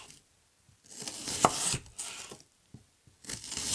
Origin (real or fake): real